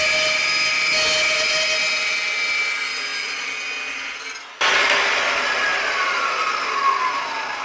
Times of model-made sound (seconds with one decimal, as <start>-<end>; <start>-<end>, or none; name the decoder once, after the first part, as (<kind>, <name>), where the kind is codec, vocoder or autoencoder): none